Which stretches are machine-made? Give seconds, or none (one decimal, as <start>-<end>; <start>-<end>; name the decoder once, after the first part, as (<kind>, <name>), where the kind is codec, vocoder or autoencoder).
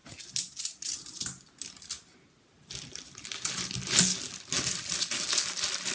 none